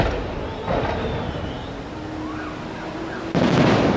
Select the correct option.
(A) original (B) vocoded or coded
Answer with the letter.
A